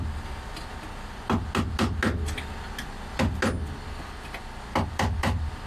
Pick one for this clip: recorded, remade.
recorded